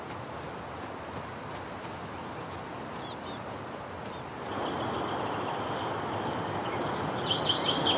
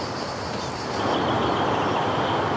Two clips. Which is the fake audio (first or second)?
second